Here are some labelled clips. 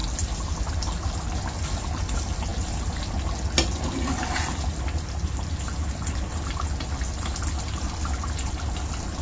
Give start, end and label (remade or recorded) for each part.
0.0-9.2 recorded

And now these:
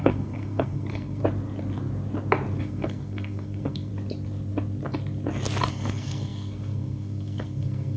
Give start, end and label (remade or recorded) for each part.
0.0-1.2 remade; 1.2-2.6 recorded; 2.6-3.9 remade; 3.9-5.7 recorded; 5.7-8.0 remade